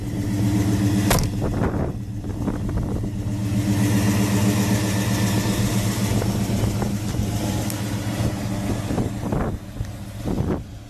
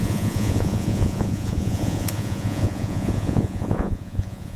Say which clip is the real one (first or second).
first